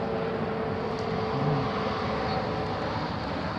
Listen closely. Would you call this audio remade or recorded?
recorded